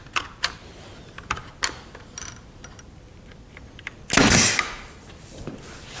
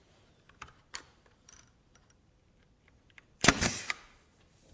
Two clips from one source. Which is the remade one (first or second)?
second